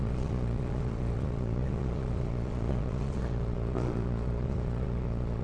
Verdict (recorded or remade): remade